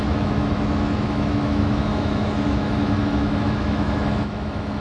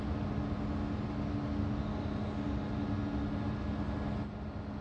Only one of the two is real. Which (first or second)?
second